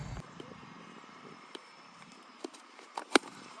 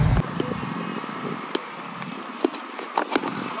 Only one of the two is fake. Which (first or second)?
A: first